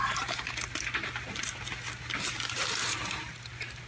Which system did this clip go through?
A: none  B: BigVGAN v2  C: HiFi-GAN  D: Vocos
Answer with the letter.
A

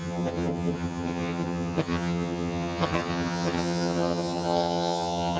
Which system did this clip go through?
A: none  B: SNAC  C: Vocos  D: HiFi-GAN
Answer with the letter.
D